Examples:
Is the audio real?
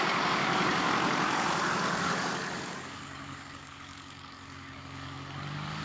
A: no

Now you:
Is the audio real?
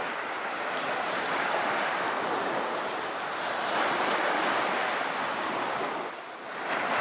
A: yes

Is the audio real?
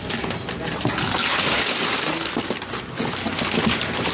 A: yes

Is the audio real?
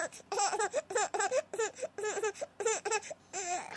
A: no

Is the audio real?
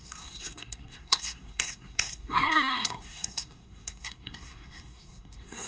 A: no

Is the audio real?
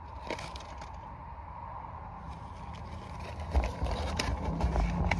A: yes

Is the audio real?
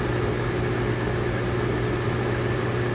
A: yes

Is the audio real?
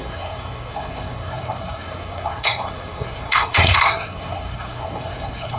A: no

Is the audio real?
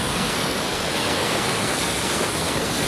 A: no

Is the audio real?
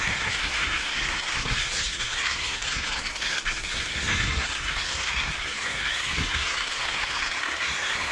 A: no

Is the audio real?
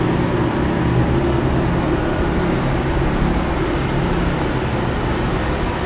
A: yes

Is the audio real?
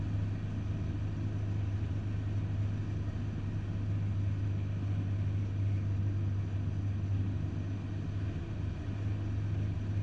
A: yes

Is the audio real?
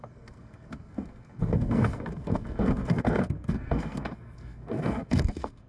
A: no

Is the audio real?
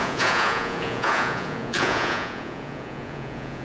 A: no